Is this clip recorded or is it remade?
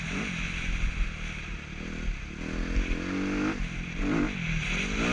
recorded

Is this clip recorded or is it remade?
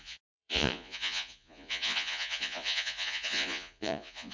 remade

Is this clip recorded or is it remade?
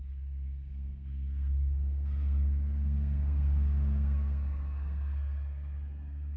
remade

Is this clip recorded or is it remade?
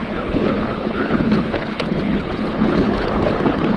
remade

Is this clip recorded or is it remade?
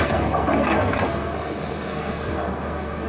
remade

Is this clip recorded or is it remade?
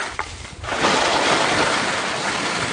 recorded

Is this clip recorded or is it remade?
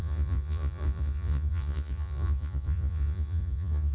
remade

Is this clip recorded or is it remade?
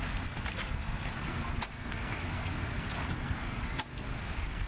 remade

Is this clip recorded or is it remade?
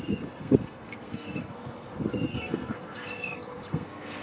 remade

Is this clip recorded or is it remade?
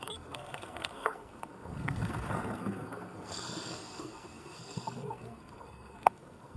remade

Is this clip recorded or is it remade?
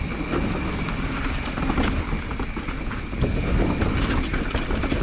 recorded